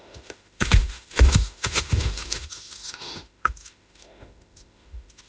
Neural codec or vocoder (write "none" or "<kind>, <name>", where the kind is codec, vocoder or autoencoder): autoencoder, DAC-VAE